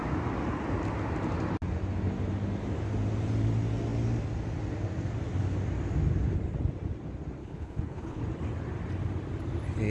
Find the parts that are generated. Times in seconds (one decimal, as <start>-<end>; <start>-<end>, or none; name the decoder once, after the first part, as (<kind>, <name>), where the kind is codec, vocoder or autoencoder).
7.4-8.2 (codec, HILCodec)